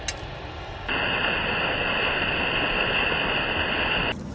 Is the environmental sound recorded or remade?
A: recorded